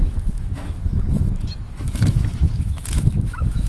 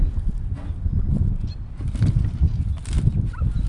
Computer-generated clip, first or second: first